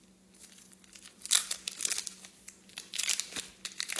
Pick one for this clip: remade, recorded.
recorded